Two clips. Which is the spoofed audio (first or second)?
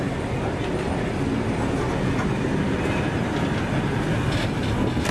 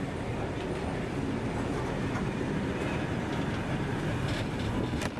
second